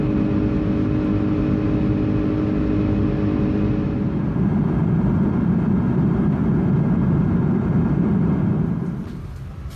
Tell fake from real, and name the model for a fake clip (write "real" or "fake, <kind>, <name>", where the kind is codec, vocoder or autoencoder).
real